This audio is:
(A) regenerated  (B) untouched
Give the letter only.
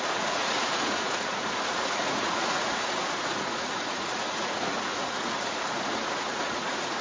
A